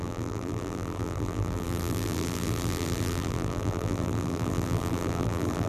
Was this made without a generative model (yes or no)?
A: no